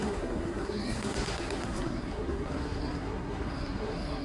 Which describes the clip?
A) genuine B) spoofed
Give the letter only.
B